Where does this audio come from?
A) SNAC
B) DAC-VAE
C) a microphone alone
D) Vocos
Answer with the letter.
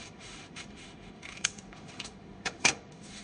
B